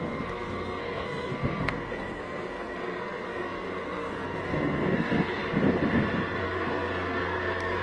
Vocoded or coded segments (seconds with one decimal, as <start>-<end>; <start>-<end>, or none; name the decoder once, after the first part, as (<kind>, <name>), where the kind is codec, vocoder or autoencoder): 0.0-5.4 (codec, SNAC); 6.4-7.8